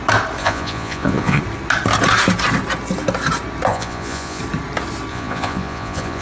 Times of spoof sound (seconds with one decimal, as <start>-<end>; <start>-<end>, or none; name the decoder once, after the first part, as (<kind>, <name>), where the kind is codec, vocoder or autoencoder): 0.4-1.4 (vocoder, Vocos); 3.7-4.4; 5.1-6.2